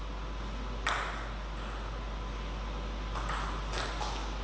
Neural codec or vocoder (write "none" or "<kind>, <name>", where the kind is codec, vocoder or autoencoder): none